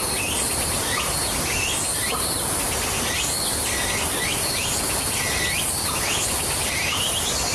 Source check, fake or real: real